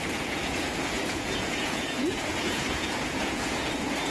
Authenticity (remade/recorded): remade